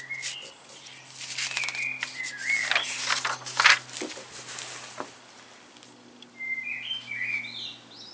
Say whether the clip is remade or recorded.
recorded